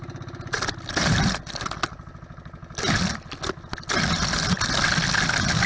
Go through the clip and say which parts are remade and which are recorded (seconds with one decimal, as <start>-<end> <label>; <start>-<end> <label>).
0.0-5.7 recorded